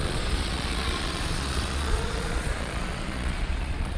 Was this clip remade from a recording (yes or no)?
yes